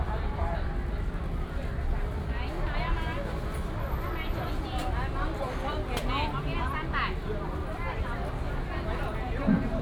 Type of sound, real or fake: real